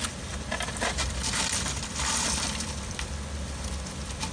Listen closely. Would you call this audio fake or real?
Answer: real